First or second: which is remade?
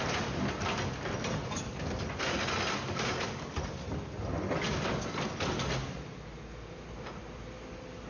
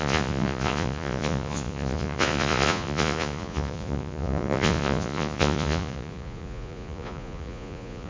second